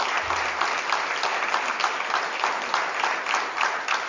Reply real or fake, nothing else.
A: real